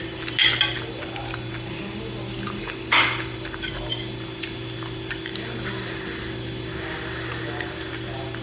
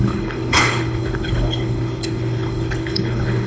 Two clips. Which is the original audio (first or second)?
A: first